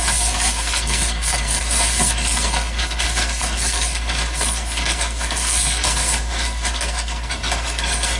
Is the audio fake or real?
fake